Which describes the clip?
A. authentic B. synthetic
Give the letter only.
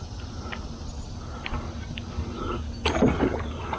A